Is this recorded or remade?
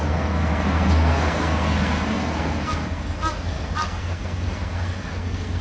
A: remade